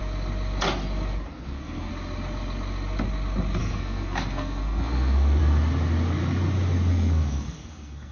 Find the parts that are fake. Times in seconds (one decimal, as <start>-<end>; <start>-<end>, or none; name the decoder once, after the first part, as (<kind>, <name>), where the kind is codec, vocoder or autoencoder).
1.3-1.9 (codec, SNAC); 3.6-5.4; 6.9-8.1